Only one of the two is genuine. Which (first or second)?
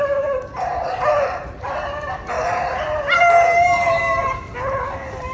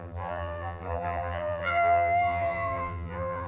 first